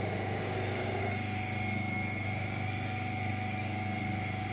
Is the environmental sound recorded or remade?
remade